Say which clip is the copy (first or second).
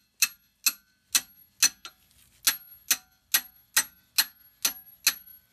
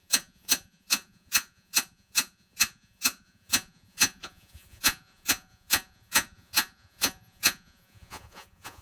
second